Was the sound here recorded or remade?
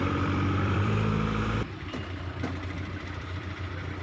remade